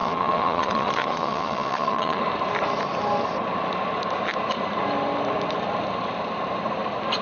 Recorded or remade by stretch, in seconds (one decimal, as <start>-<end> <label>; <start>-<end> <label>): 0.0-2.2 remade; 2.2-7.2 recorded